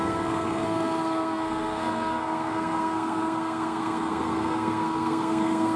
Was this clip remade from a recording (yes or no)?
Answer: yes